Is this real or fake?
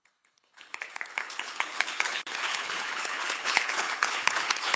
fake